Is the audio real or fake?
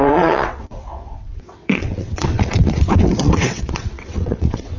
fake